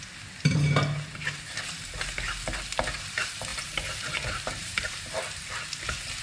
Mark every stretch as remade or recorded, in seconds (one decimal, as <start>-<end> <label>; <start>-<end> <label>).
0.0-3.5 recorded; 3.5-5.5 remade; 5.5-6.2 recorded

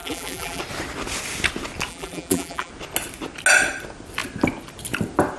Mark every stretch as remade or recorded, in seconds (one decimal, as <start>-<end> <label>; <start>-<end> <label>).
0.0-0.6 remade; 0.6-1.9 recorded; 1.9-2.7 remade; 2.7-5.4 recorded

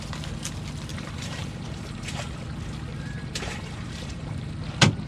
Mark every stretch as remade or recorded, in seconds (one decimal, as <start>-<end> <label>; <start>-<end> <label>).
0.0-0.9 recorded; 0.9-2.2 remade; 2.2-2.9 recorded; 2.9-4.5 remade; 4.5-5.1 recorded

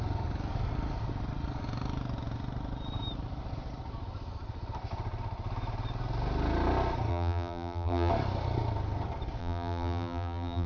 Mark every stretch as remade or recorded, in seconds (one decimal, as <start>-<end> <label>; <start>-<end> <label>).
0.0-7.1 recorded; 7.1-8.1 remade; 8.1-9.4 recorded; 9.4-10.7 remade

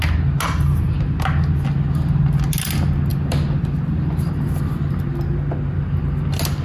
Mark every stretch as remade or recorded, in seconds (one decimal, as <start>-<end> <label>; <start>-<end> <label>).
0.0-6.6 recorded

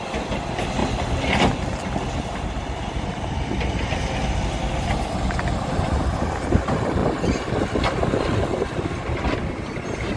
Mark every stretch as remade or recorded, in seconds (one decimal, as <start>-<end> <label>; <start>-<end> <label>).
0.0-8.5 recorded; 8.5-9.0 remade; 9.0-10.2 recorded

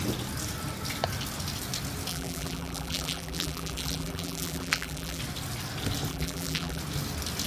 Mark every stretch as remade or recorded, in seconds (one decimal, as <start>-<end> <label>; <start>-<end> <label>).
0.0-2.1 recorded; 2.1-5.2 remade; 5.2-6.1 recorded; 6.1-6.8 remade; 6.8-7.5 recorded

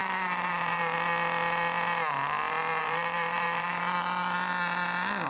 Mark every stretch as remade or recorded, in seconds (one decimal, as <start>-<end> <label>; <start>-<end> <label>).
0.0-0.8 remade; 0.8-2.8 recorded; 2.8-3.8 remade; 3.8-5.3 recorded